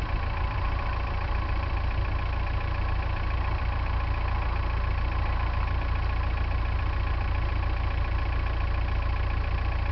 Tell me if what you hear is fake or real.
real